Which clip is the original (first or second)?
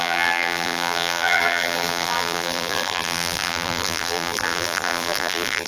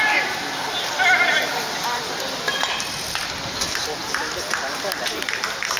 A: second